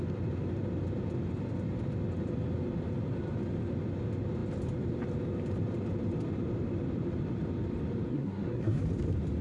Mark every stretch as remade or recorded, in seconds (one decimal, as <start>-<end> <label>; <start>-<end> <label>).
0.0-8.1 recorded; 8.1-8.8 remade; 8.8-9.4 recorded